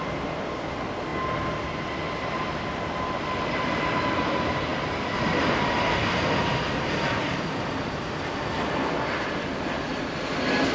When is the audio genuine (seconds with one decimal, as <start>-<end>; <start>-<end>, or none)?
0.0-10.7